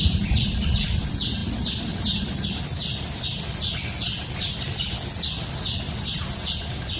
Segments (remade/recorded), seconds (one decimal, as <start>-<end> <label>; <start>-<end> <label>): 0.0-7.0 recorded